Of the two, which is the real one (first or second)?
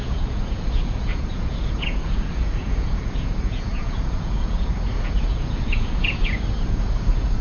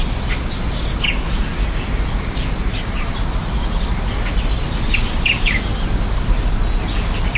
second